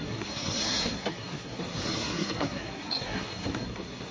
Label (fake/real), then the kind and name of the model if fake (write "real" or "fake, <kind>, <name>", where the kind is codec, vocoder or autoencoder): fake, codec, SNAC